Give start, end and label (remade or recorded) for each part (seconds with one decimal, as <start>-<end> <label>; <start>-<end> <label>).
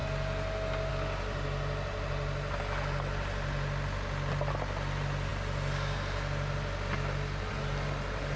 0.0-8.4 recorded